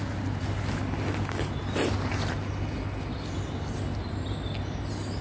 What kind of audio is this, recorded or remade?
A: recorded